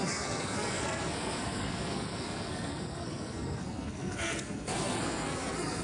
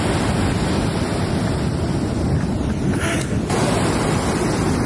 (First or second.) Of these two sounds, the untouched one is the second